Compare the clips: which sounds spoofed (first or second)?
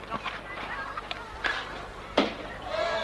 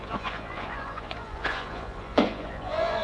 second